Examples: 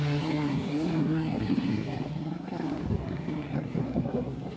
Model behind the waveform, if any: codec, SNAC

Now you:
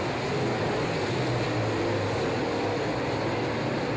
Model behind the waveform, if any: none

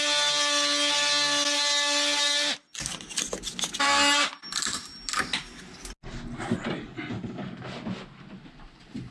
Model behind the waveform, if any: none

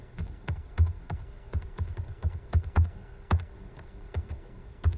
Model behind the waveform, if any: codec, SNAC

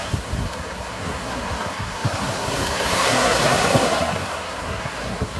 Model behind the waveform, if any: codec, SNAC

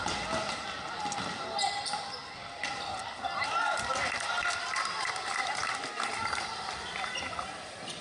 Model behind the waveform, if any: none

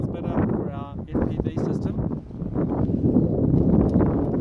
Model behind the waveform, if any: none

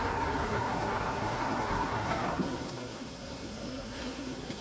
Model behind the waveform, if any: codec, SNAC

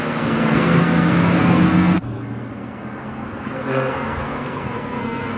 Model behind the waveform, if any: codec, SNAC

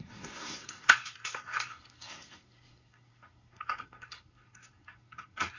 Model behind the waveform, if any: codec, SNAC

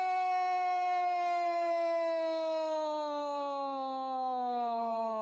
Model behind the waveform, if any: codec, SNAC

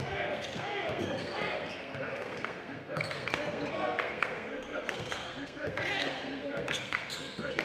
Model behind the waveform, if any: codec, SNAC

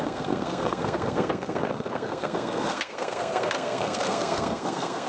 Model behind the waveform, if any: codec, SNAC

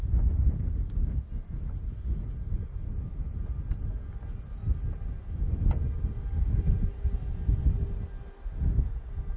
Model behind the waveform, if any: none